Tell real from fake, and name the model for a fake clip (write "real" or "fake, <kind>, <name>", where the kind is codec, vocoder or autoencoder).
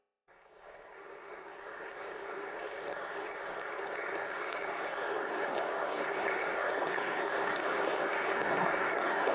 fake, codec, SNAC